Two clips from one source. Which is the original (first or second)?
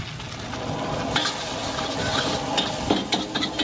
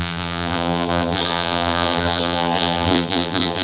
first